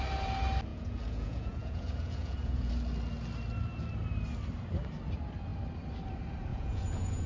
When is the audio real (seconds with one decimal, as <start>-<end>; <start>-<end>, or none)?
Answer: 0.0-0.7; 2.7-6.5